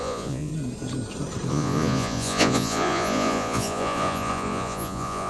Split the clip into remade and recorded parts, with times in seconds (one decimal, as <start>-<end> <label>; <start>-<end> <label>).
0.0-0.5 remade; 0.5-1.5 recorded; 1.5-5.3 remade